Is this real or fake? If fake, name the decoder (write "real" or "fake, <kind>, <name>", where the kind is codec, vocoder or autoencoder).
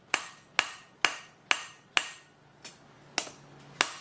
real